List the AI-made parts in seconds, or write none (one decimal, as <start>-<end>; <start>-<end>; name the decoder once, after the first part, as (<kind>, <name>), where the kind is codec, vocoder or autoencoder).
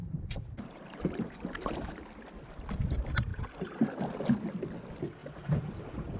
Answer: 0.0-1.9 (vocoder, BigVGAN v2); 5.2-5.7